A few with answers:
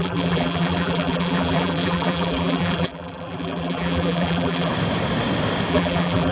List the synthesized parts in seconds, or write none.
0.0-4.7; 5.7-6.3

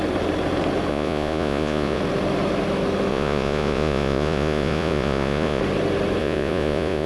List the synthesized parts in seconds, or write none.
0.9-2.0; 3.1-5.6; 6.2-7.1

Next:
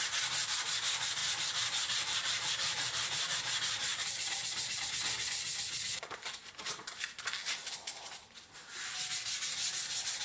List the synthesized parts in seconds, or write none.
1.2-3.4; 3.9-4.9

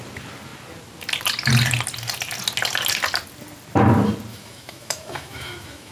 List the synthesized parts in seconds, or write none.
4.3-5.9

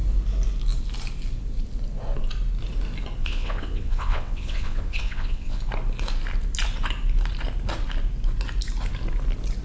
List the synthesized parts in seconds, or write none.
3.2-5.6

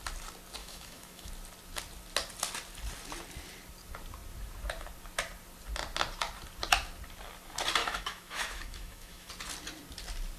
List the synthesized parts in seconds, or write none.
0.6-1.3; 7.8-9.3

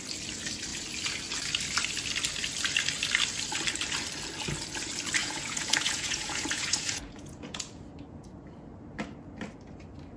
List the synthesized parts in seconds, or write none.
5.2-7.8